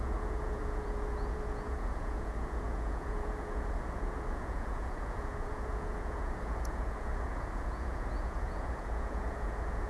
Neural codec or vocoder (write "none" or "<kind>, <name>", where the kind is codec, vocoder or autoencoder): vocoder, Vocos